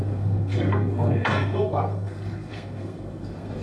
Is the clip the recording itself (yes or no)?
no